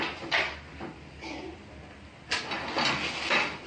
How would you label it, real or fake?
real